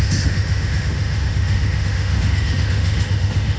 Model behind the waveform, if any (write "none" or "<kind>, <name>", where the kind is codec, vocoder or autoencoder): autoencoder, DAC-VAE